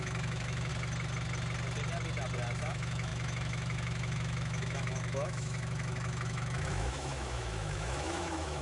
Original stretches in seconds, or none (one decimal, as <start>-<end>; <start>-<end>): 0.7-2.6